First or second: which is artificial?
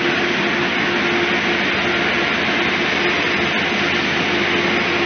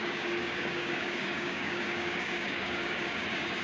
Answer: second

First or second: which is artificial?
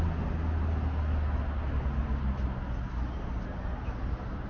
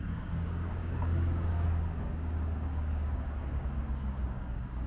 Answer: second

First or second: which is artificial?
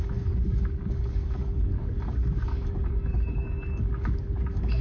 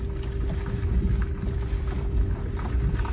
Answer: first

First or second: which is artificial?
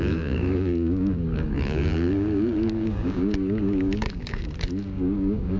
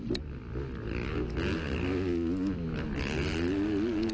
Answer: first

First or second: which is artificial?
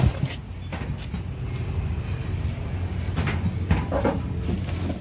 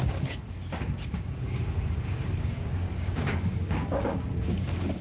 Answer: second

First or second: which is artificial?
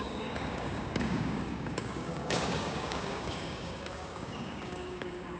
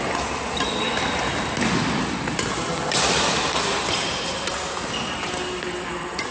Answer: first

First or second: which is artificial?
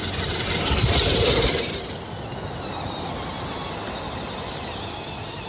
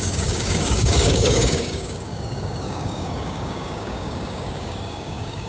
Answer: second